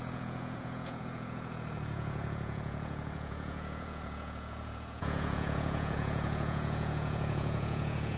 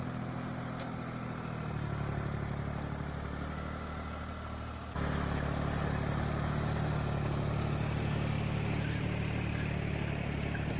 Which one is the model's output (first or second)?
first